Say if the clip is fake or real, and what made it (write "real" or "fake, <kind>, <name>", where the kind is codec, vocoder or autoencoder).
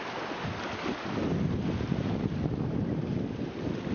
real